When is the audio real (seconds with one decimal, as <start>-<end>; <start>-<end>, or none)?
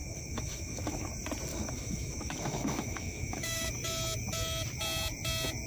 1.1-1.5; 3.7-5.7